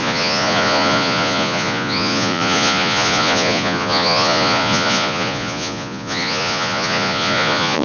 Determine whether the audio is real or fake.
fake